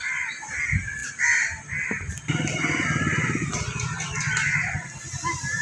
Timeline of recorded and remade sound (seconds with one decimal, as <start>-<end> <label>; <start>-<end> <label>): 0.0-5.6 recorded